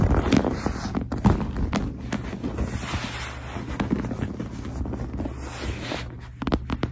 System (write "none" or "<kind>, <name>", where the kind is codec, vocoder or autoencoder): none